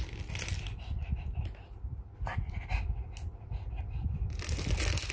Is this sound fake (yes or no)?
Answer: no